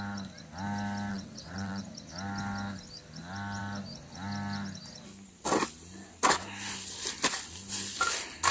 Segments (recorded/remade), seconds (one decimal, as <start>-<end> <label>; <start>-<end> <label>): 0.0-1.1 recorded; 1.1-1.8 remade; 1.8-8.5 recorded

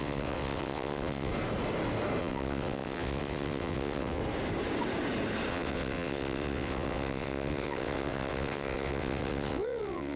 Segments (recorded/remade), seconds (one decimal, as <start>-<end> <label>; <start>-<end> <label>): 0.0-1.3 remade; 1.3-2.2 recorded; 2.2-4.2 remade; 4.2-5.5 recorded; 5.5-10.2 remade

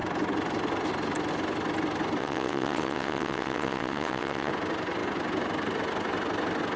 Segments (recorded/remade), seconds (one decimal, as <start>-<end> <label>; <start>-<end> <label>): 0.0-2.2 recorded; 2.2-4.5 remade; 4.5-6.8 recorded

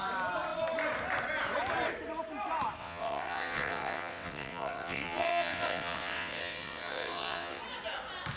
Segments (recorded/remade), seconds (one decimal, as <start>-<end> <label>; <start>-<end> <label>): 0.0-2.8 recorded; 2.8-7.6 remade; 7.6-8.4 recorded

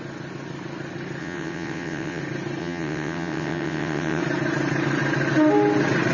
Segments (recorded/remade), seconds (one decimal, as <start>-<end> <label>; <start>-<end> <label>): 0.0-1.2 recorded; 1.2-2.2 remade; 2.2-2.6 recorded; 2.6-4.2 remade; 4.2-6.1 recorded